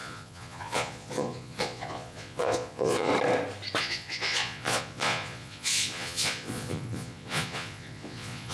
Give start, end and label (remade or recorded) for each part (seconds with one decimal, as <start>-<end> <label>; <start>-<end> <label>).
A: 0.0-3.1 remade; 3.1-3.8 recorded; 3.8-8.5 remade